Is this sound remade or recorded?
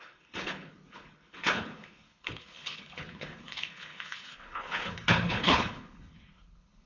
remade